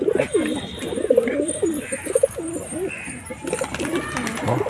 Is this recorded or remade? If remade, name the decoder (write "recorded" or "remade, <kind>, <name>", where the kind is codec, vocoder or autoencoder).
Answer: recorded